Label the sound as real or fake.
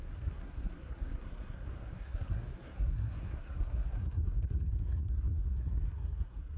fake